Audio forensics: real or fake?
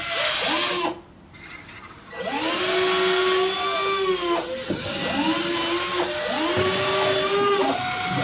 real